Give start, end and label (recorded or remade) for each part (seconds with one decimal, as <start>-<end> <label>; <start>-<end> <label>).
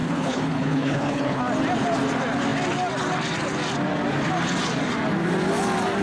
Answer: 0.0-1.4 remade; 1.4-6.0 recorded